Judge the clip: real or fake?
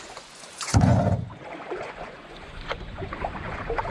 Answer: fake